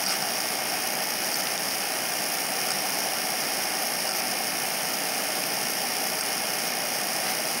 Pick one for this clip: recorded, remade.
recorded